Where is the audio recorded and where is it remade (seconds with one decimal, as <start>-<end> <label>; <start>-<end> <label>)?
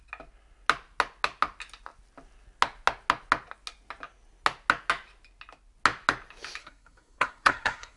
0.0-6.6 recorded; 6.6-8.0 remade